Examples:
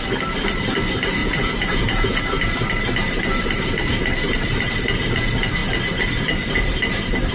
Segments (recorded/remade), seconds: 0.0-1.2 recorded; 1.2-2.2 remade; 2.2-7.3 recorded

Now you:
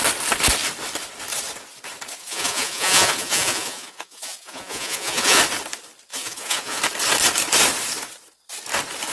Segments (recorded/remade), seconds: 0.0-2.2 recorded; 2.2-5.4 remade; 5.4-6.1 recorded; 6.1-6.8 remade; 6.8-9.1 recorded

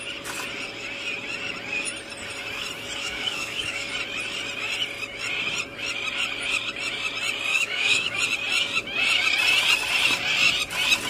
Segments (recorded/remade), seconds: 0.0-3.0 recorded; 3.0-3.9 remade; 3.9-7.5 recorded; 7.5-8.2 remade; 8.2-11.1 recorded

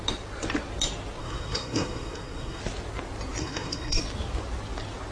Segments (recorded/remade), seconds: 0.0-1.2 recorded; 1.2-2.6 remade; 2.6-3.4 recorded; 3.4-4.0 remade; 4.0-5.1 recorded

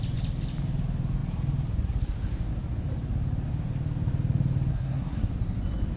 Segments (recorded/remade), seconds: 0.0-4.7 recorded; 4.7-5.3 remade; 5.3-6.0 recorded

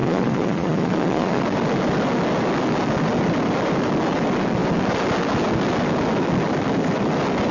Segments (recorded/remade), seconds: 0.0-1.4 remade; 1.4-7.5 recorded

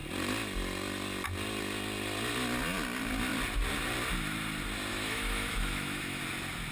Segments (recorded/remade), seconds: 0.0-4.9 recorded; 4.9-6.2 remade; 6.2-6.7 recorded